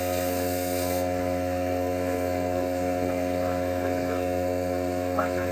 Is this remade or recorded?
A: remade